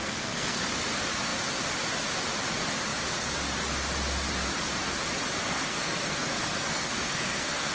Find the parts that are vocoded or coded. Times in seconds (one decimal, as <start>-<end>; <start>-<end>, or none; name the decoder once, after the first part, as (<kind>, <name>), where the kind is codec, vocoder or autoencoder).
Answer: 0.0-0.6 (codec, SNAC); 5.4-7.7